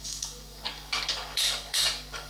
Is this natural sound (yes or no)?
no